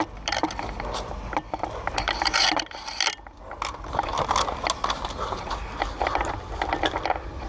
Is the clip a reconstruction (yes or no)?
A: no